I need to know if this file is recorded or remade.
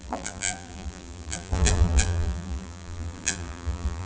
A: remade